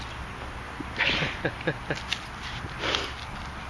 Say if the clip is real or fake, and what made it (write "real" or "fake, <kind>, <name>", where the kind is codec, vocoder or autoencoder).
real